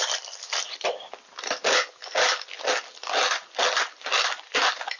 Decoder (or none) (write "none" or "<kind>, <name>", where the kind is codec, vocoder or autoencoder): none